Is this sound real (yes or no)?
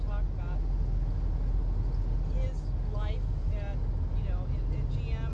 yes